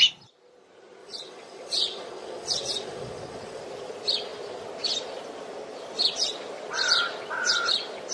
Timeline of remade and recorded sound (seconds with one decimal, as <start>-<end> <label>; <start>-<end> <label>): 0.0-1.0 recorded; 1.0-3.6 remade; 3.6-8.1 recorded